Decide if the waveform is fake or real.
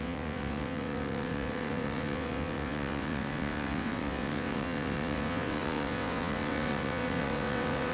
fake